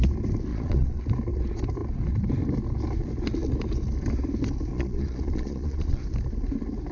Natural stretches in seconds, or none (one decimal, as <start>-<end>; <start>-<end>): 0.0-0.5; 1.0-4.7; 6.0-6.9

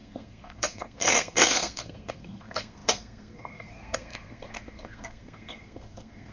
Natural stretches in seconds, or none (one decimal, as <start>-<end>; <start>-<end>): none

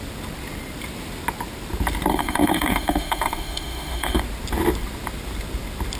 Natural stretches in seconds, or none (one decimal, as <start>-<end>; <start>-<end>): 0.0-2.1; 4.2-6.0

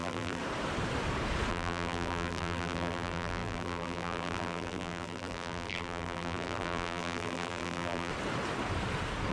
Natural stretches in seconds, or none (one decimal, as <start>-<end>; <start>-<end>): 0.4-1.5; 8.1-9.3